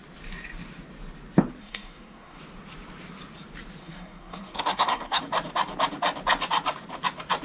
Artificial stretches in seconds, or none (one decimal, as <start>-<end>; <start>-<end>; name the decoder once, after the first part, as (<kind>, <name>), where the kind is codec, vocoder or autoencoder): 1.6-2.4 (codec, SNAC); 3.8-5.2